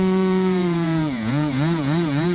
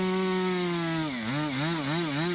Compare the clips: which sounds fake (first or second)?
first